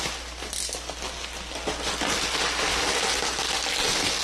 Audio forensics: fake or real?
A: real